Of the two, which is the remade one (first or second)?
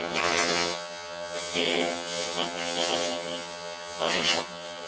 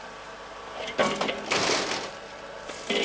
first